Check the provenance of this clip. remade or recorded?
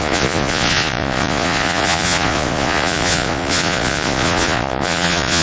remade